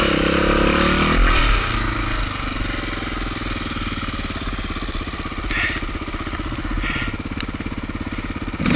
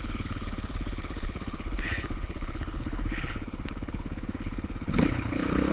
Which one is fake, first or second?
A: second